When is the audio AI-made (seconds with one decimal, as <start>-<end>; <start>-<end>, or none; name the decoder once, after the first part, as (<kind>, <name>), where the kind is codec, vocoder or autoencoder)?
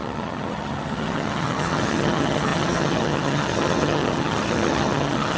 0.0-5.4 (vocoder, HiFi-GAN)